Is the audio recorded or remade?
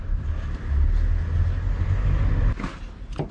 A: recorded